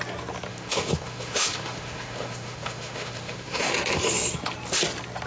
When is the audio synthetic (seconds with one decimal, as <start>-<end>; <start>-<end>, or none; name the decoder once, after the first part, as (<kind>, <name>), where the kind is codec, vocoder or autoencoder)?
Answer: 0.5-3.7 (autoencoder, DAC-VAE)